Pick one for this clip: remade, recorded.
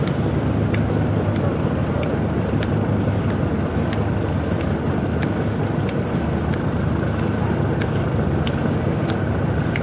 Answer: recorded